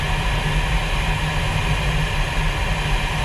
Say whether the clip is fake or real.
real